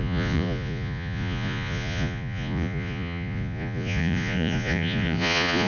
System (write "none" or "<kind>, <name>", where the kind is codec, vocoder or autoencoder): vocoder, Vocos